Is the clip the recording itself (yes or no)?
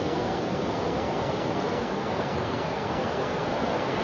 no